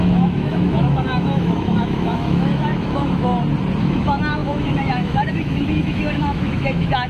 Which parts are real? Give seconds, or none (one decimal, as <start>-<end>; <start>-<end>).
3.3-3.8